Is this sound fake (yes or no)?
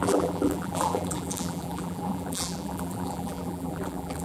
yes